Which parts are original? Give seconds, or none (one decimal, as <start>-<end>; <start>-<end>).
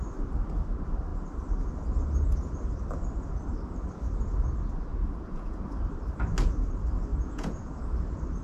0.0-4.9; 5.6-7.1; 7.8-8.4